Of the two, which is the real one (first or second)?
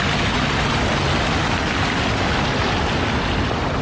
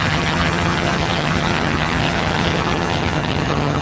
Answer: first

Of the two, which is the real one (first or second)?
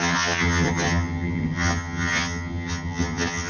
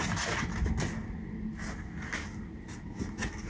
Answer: second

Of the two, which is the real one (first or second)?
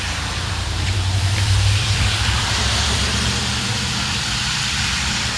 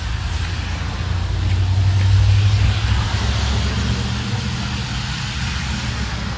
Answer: second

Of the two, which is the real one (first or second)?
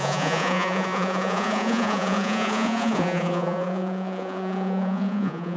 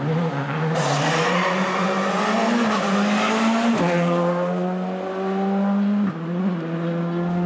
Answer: second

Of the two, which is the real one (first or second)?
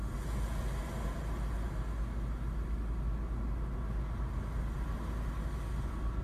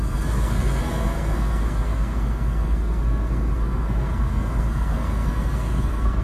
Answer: first